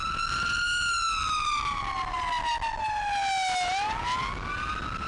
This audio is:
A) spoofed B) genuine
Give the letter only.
B